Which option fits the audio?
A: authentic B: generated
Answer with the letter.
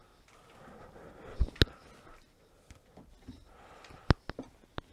A